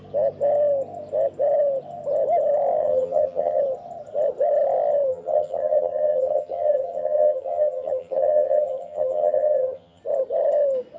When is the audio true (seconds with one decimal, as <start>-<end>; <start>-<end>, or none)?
0.0-2.8; 3.6-5.1; 10.0-11.0